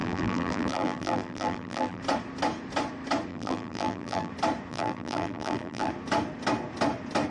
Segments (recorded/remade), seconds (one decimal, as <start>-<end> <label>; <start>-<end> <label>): 0.0-2.0 remade; 2.0-3.3 recorded; 3.3-4.3 remade; 4.3-4.7 recorded; 4.7-5.9 remade; 5.9-7.3 recorded